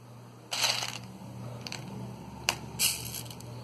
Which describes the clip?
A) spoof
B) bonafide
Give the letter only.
B